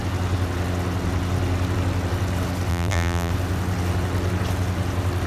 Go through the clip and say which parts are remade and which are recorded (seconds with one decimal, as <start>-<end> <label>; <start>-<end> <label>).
0.0-2.7 recorded; 2.7-3.3 remade; 3.3-5.3 recorded